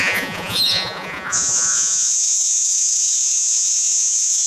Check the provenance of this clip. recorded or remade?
remade